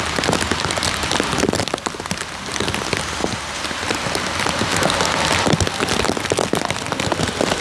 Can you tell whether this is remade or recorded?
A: recorded